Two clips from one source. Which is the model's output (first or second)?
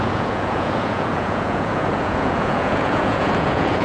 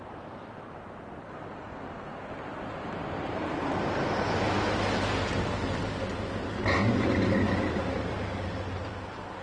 first